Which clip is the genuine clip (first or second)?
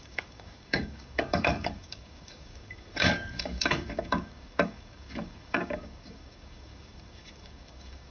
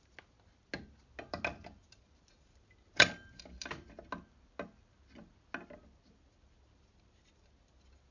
second